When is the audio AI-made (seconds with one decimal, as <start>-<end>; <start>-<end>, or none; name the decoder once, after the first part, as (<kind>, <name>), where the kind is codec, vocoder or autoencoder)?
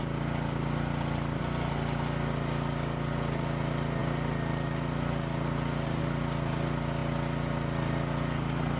none